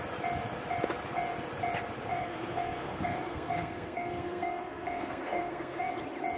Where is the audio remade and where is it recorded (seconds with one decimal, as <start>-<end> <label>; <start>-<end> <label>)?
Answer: 0.0-2.1 recorded; 2.1-5.9 remade; 5.9-6.4 recorded